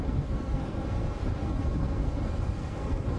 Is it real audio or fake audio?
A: fake